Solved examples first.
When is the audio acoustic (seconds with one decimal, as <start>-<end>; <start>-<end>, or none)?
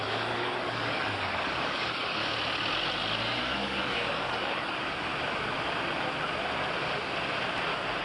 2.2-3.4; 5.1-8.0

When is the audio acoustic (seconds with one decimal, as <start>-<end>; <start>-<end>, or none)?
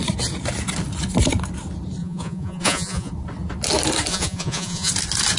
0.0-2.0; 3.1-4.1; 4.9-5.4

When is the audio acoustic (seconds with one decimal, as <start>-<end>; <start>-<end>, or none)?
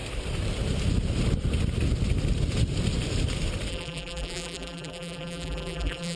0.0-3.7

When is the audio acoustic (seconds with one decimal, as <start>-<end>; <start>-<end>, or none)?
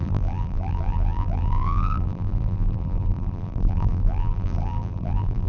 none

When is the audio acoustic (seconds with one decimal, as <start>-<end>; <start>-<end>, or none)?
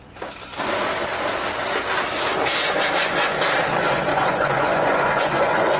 0.0-2.6; 3.4-4.1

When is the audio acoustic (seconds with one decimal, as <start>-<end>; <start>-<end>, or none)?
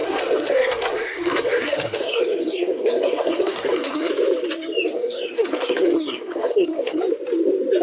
4.1-4.9; 7.0-7.8